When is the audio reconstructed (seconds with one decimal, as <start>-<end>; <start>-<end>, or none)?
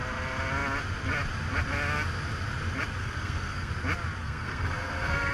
3.0-3.7; 4.2-5.3